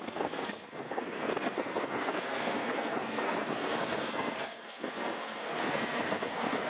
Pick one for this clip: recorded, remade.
remade